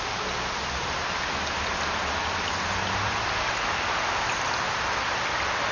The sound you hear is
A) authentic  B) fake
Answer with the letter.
A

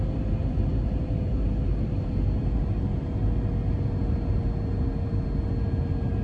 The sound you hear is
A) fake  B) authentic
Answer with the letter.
B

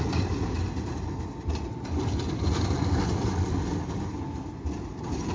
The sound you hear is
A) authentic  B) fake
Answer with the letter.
A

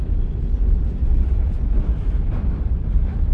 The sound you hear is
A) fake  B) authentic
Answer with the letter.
B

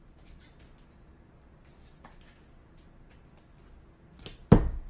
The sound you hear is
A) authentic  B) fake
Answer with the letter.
A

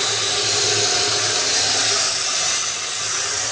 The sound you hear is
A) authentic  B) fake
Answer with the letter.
A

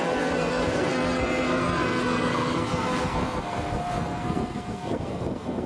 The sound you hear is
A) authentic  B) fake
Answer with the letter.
B